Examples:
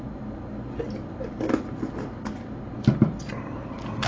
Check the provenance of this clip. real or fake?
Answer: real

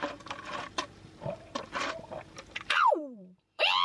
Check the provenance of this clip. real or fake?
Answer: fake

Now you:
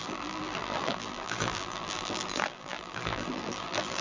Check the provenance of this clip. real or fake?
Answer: fake